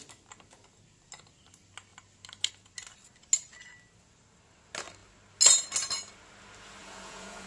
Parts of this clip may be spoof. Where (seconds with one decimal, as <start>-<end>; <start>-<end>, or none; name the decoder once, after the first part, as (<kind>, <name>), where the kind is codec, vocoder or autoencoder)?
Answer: 6.8-7.5 (vocoder, Vocos)